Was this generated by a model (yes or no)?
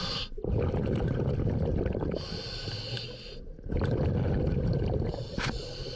no